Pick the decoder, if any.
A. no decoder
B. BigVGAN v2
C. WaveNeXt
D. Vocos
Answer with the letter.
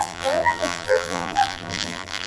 B